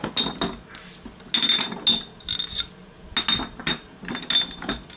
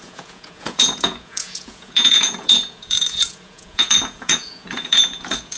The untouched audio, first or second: first